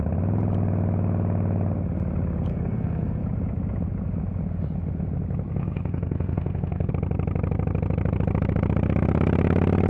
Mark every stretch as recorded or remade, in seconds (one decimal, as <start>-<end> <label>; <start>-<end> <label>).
0.0-2.5 recorded; 2.5-3.2 remade; 3.2-5.6 recorded; 5.6-6.9 remade; 6.9-9.9 recorded

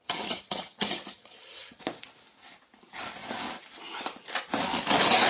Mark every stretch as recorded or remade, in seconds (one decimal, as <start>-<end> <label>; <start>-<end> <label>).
0.0-1.8 remade; 1.8-5.3 recorded

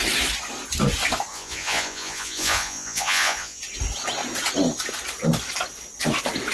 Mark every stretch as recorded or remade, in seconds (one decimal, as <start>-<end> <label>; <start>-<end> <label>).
0.0-1.3 recorded; 1.3-3.6 remade; 3.6-6.5 recorded

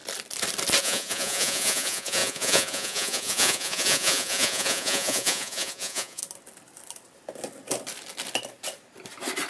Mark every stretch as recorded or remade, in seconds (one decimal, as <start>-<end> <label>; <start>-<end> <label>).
0.0-0.8 recorded; 0.8-6.2 remade; 6.2-9.5 recorded